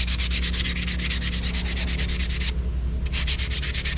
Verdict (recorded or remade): recorded